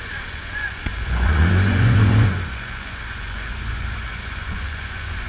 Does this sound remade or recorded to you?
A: remade